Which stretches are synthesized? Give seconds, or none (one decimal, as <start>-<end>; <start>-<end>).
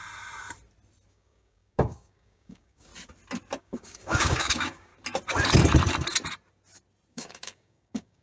1.1-2.9; 3.6-4.9; 7.1-8.2